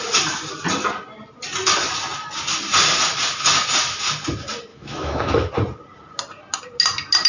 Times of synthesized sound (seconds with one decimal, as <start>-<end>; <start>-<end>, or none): 4.7-5.5